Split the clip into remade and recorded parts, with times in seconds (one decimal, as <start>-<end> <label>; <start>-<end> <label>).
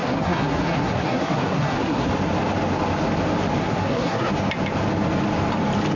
0.0-2.1 remade; 2.1-3.6 recorded; 3.6-4.3 remade; 4.3-6.0 recorded